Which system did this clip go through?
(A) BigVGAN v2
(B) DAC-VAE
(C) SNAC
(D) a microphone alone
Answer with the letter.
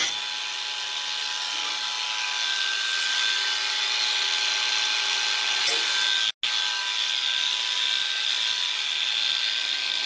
D